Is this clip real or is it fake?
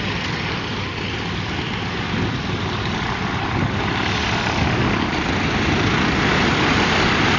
real